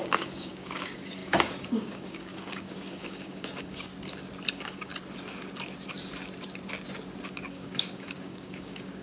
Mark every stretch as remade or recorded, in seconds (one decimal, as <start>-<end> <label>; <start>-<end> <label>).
0.0-3.9 remade; 3.9-4.5 recorded; 4.5-4.9 remade; 4.9-7.3 recorded; 7.3-9.0 remade